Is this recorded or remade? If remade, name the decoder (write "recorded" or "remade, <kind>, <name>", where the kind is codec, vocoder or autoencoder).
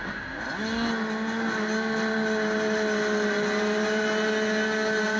recorded